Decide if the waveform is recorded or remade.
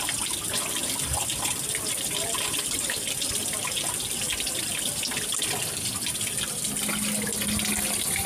recorded